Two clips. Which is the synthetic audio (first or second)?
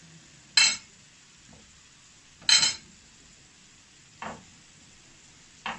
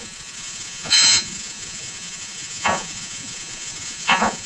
second